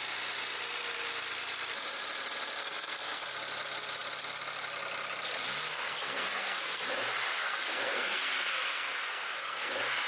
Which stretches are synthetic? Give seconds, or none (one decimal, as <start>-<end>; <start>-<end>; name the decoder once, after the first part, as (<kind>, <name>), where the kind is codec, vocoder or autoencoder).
2.6-3.3 (codec, SNAC); 5.7-6.8; 7.3-9.7